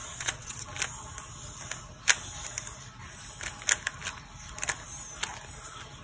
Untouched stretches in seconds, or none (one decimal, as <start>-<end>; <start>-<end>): 0.6-6.0